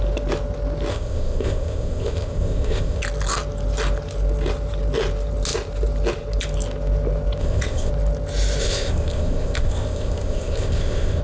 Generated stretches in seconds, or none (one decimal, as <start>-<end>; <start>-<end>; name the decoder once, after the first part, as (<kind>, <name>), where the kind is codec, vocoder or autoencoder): 0.9-3.0 (codec, ZipCodec); 7.4-7.9; 8.6-11.2